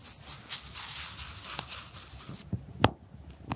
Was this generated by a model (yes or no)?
no